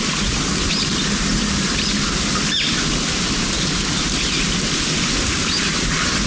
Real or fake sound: real